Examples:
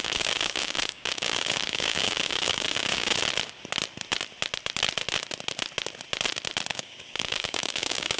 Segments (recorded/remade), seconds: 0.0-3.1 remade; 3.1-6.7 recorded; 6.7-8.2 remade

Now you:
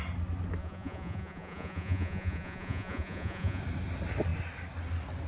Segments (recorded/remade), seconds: 0.0-0.6 recorded; 0.6-3.6 remade; 3.6-5.3 recorded

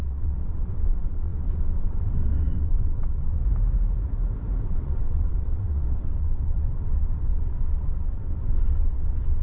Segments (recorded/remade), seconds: 0.0-3.4 remade; 3.4-4.6 recorded; 4.6-9.4 remade

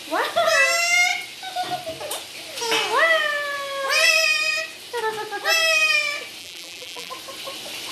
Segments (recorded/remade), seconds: 0.0-6.4 recorded; 6.4-7.1 remade; 7.1-7.9 recorded